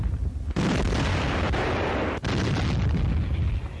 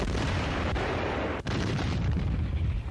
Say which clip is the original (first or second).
first